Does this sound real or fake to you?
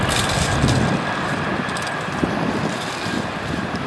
real